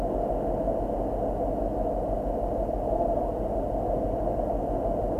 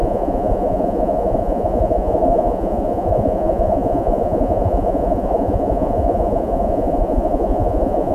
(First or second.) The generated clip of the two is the second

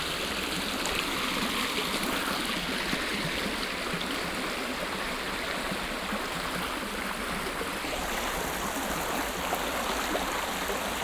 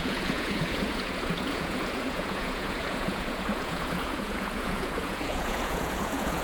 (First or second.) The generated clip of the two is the second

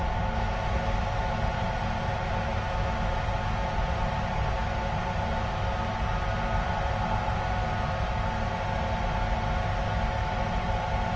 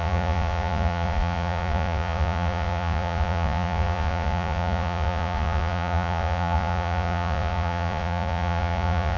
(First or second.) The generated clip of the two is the second